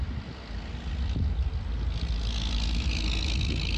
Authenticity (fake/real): real